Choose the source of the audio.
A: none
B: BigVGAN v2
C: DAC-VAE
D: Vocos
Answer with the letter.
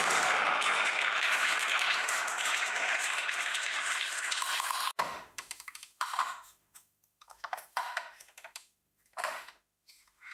C